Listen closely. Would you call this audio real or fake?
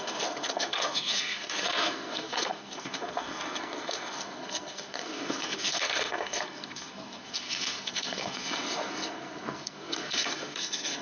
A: fake